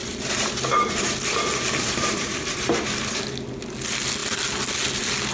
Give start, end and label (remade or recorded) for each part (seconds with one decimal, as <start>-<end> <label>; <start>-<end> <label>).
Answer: 0.0-3.2 remade; 3.2-5.3 recorded